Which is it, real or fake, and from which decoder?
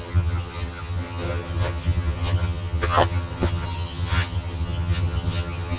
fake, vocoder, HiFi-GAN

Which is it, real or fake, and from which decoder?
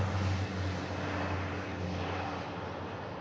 real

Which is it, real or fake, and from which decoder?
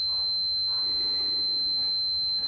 real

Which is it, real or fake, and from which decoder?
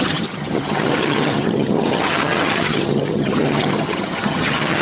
fake, vocoder, HiFi-GAN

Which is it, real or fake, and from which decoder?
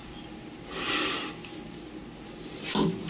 real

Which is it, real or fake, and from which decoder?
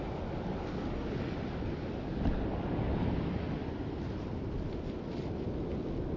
real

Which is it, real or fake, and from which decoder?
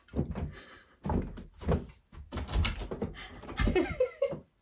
real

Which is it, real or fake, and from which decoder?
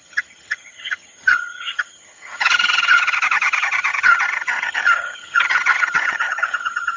fake, vocoder, HiFi-GAN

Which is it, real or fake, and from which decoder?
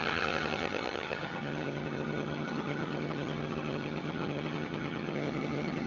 fake, vocoder, HiFi-GAN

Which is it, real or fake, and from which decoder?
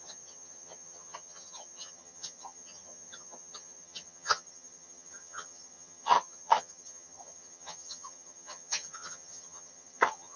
fake, vocoder, HiFi-GAN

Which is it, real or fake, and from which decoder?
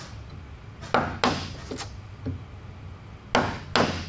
real